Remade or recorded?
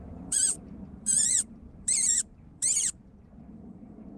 remade